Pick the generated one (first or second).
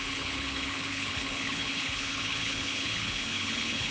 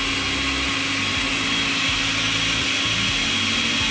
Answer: first